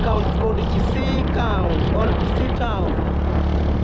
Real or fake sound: real